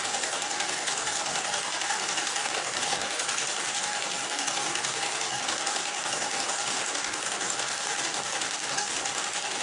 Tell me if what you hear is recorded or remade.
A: remade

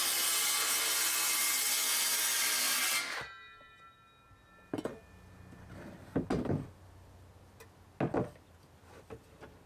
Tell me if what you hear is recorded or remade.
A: recorded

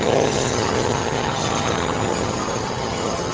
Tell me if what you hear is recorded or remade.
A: remade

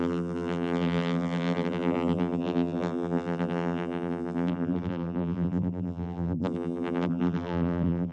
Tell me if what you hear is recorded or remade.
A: remade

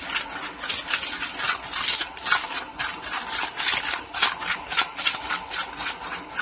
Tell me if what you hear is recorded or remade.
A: recorded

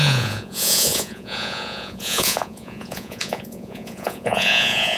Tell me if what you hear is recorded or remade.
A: remade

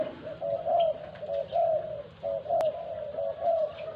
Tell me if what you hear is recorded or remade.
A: recorded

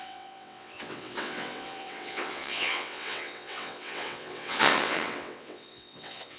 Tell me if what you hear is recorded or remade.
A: remade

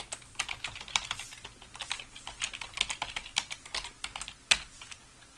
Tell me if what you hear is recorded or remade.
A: recorded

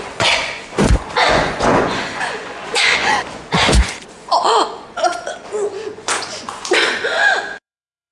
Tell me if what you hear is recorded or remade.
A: remade